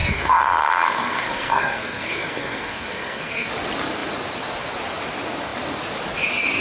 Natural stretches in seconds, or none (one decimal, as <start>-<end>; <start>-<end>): 3.5-6.6